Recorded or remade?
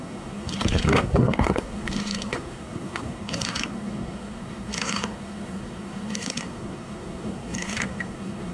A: remade